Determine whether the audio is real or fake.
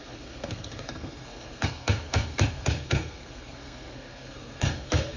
fake